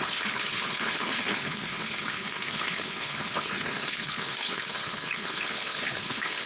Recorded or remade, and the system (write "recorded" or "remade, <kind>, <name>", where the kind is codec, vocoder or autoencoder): remade, codec, HILCodec